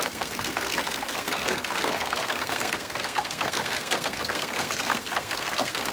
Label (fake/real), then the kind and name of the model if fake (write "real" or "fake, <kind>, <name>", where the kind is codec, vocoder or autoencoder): fake, codec, SNAC